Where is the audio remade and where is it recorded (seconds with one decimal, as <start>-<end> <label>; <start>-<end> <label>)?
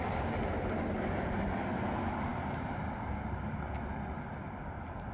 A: 0.0-2.3 recorded; 2.3-3.4 remade; 3.4-5.1 recorded